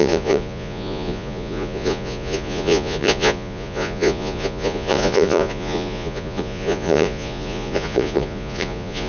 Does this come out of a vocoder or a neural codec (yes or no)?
yes